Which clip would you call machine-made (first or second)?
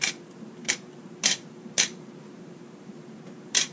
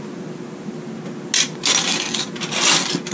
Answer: first